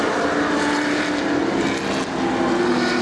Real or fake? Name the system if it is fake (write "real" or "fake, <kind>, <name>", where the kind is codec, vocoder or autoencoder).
real